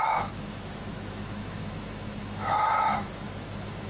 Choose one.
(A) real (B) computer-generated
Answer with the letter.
B